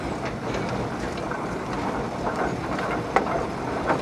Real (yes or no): yes